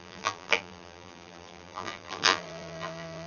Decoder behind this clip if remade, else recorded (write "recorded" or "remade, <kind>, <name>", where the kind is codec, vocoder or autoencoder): remade, vocoder, BigVGAN v2